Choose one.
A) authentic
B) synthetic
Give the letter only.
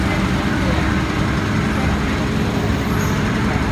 A